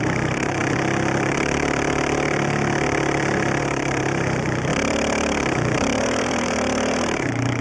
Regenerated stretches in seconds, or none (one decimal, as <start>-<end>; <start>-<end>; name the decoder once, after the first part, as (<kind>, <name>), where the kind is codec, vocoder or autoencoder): 0.0-0.6 (vocoder, BigVGAN v2); 3.6-4.7; 6.0-7.6